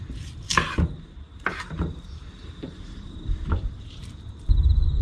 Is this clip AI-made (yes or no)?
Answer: yes